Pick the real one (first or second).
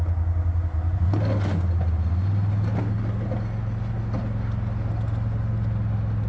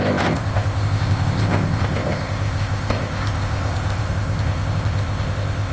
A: first